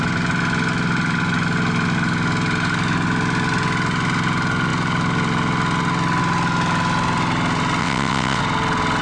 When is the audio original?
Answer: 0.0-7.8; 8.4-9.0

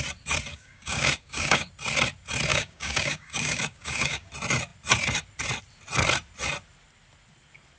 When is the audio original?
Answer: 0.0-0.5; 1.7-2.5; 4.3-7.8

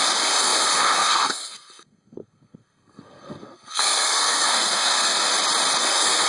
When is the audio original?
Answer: 5.3-5.8

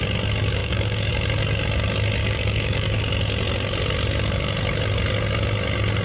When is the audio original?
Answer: 0.0-0.6; 1.1-2.2; 3.0-6.0